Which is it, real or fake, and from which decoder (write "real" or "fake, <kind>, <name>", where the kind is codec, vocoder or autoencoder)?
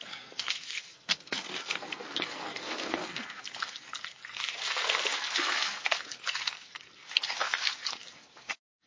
fake, codec, SNAC